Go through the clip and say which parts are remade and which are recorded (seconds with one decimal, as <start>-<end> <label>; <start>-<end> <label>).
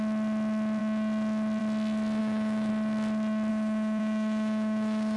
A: 0.0-2.2 recorded; 2.2-2.7 remade; 2.7-3.5 recorded; 3.5-5.2 remade